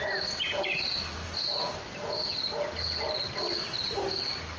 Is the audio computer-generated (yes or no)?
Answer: no